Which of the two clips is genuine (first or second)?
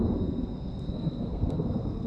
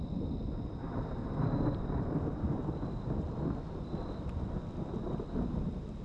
second